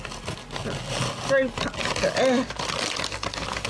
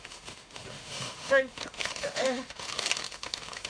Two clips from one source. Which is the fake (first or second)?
second